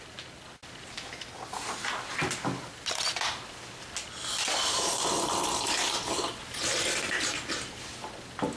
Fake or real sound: real